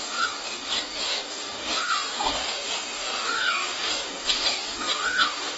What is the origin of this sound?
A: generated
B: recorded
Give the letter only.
A